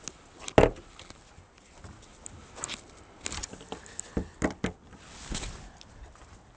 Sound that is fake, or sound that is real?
real